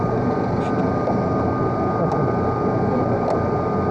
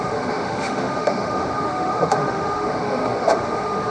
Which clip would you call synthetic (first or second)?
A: second